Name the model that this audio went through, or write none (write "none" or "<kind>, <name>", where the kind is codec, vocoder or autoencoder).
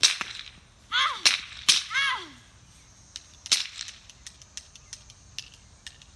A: none